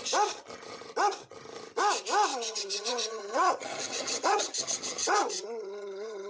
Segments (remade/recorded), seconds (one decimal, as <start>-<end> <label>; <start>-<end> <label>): 0.0-2.3 recorded; 2.3-6.3 remade